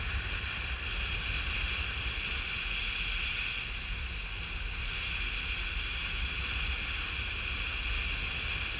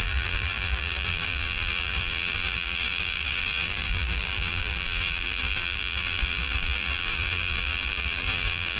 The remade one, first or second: second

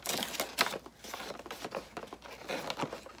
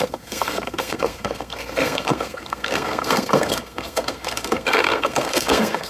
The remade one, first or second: second